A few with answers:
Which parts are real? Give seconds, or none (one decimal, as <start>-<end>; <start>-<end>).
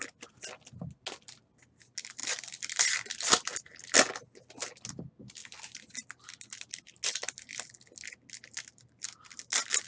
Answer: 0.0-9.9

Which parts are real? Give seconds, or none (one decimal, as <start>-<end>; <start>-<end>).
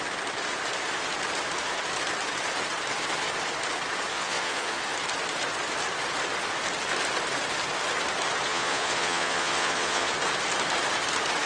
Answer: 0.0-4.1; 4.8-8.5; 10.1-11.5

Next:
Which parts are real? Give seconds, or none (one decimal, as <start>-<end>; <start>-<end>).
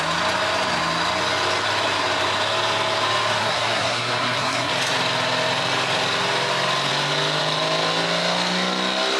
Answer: 0.0-3.4; 4.7-9.2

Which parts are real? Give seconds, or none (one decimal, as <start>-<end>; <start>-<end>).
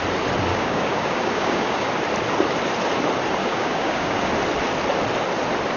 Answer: 0.0-0.5; 1.9-3.4; 4.3-5.8